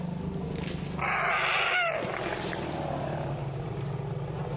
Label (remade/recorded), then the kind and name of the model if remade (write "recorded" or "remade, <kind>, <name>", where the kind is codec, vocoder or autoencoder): recorded